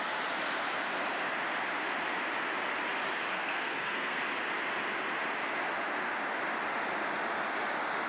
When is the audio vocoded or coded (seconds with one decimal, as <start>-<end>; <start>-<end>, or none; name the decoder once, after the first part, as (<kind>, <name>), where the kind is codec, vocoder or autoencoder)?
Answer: 3.3-4.2 (codec, SNAC)